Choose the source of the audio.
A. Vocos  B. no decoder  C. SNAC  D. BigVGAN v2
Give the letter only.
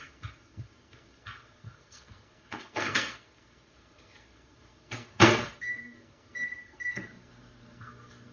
C